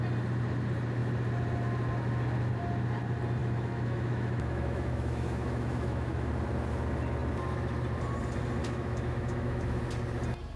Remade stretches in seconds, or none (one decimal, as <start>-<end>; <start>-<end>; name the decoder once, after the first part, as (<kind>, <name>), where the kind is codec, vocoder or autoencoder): 3.4-6.3 (autoencoder, DAC-VAE); 8.6-9.8